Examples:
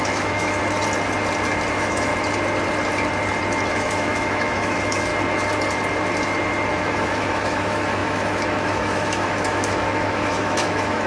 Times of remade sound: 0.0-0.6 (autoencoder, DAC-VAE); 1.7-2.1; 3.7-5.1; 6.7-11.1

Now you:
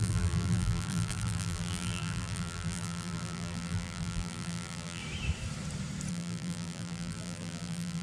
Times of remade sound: 0.0-5.0 (vocoder, BigVGAN v2); 6.1-8.0